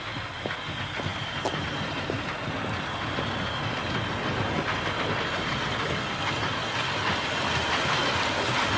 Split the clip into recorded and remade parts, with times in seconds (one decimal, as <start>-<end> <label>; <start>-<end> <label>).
0.0-8.8 recorded